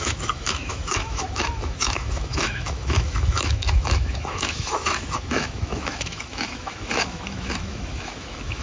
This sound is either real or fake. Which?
fake